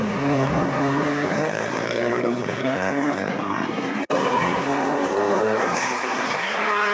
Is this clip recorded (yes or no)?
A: no